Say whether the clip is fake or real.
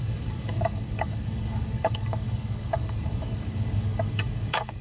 fake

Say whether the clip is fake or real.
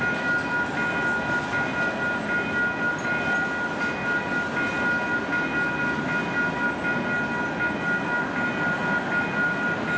real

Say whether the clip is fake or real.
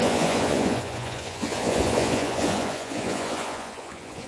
fake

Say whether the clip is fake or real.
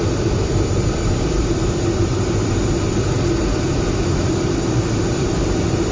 fake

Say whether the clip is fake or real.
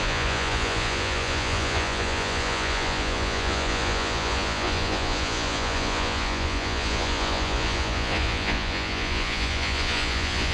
fake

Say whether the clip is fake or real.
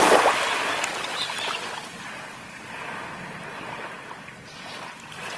real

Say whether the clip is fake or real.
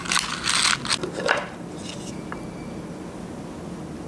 real